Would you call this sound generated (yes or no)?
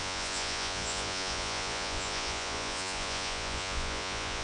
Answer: yes